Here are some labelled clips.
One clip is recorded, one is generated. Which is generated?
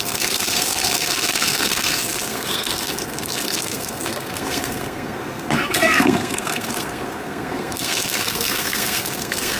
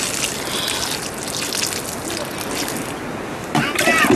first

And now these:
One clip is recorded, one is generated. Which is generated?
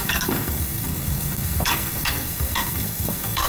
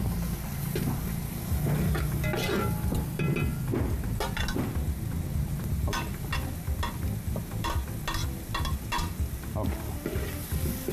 first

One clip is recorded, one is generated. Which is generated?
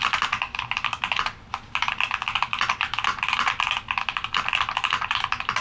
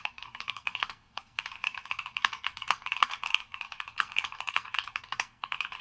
second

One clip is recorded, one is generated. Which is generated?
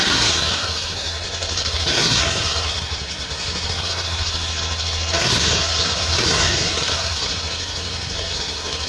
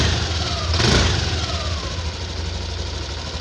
first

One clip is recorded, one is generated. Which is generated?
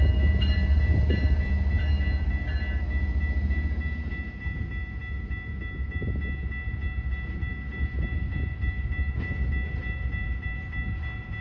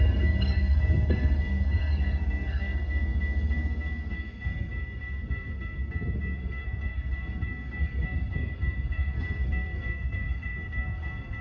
second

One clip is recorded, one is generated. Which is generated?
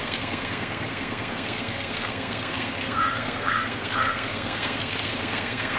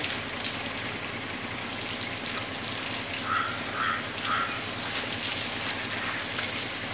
first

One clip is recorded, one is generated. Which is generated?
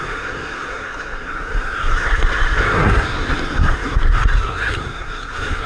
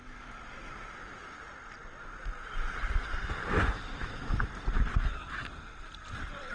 first